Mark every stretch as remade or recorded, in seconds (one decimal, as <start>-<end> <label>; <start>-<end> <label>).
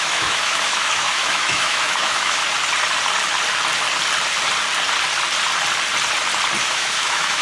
0.0-2.4 remade; 2.4-6.6 recorded; 6.6-7.4 remade